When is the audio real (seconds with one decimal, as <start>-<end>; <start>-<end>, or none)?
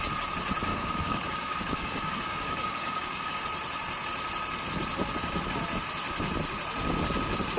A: 0.0-0.7; 3.3-7.6